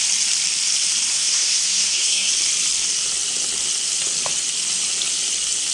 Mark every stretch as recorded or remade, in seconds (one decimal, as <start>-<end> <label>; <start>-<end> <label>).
0.0-1.1 recorded; 1.1-2.3 remade; 2.3-5.7 recorded